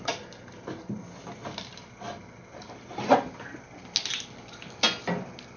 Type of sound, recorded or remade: recorded